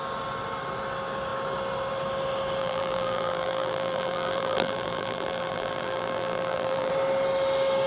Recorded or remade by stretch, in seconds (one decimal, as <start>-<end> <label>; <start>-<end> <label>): 0.0-2.6 recorded; 2.6-6.9 remade; 6.9-7.9 recorded